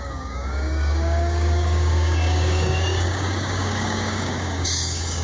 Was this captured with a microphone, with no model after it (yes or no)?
no